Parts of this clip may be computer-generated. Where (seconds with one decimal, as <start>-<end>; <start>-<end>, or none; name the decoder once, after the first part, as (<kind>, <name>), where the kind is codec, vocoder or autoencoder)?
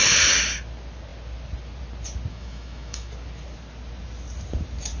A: 2.3-3.1 (autoencoder, DAC-VAE)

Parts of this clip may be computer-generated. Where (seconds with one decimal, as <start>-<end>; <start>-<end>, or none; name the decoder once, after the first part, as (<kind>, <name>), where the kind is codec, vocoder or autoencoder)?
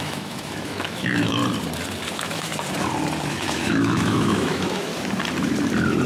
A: 0.0-1.4 (autoencoder, DAC-VAE); 2.1-2.5; 3.2-4.9